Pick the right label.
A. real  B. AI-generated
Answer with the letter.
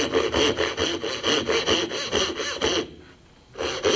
A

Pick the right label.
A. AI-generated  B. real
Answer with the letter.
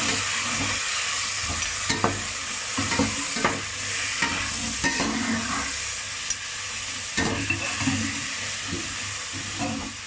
B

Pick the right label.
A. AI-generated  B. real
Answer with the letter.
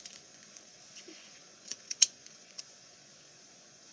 A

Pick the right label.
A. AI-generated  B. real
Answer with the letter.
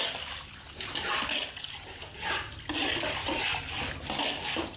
B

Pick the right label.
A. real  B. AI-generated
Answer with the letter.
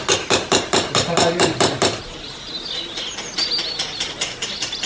A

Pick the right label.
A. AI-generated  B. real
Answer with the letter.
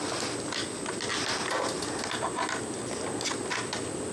B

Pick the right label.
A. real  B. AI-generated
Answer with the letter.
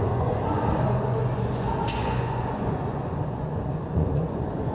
B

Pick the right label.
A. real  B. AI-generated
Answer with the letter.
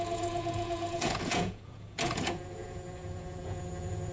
B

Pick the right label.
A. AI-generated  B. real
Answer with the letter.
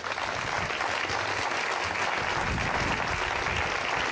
B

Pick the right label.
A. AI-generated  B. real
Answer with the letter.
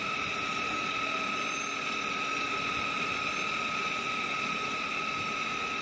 B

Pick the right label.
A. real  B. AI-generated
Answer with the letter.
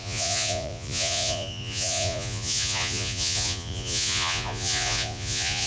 B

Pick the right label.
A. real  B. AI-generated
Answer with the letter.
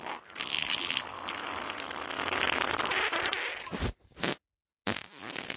A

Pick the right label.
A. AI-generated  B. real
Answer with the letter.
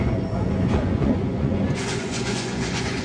A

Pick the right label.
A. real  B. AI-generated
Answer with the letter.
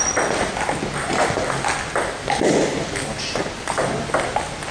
A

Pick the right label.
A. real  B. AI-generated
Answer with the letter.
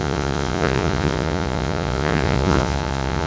B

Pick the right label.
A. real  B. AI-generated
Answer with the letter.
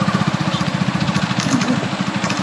A